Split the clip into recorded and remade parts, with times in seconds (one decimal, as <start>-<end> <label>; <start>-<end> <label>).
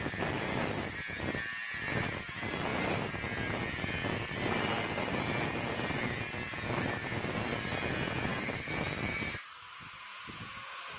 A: 0.0-10.1 recorded; 10.1-11.0 remade